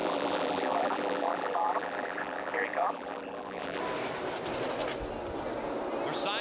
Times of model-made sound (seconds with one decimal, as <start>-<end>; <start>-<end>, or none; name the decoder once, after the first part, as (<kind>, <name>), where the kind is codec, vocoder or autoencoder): 0.0-3.8 (vocoder, BigVGAN v2)